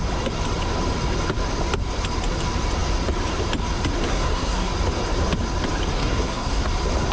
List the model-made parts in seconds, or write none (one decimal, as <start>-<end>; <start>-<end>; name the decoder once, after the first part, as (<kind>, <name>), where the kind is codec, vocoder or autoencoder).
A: 4.1-4.7 (codec, SNAC); 6.0-6.6